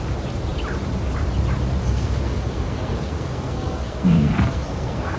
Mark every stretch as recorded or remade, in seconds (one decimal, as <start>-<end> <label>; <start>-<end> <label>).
0.0-1.8 recorded; 1.8-5.2 remade